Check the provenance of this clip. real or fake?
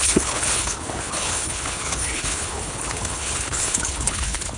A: fake